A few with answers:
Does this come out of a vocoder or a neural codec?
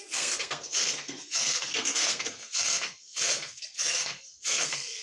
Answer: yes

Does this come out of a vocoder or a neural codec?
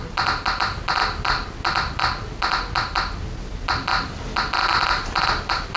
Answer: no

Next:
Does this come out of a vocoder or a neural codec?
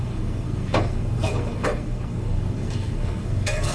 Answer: yes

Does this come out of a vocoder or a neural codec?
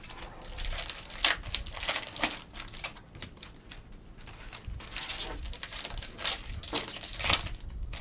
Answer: no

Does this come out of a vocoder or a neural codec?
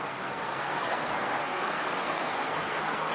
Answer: yes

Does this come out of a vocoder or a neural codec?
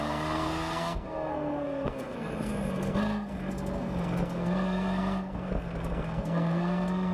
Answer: yes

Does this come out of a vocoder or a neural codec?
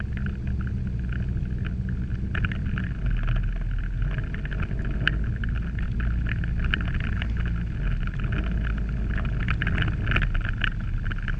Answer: no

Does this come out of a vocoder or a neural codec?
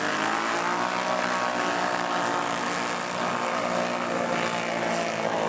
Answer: no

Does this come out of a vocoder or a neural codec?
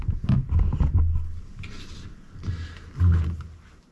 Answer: no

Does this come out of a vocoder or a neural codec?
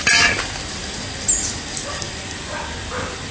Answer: no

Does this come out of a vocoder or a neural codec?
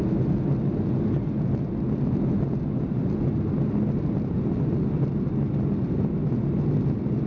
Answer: no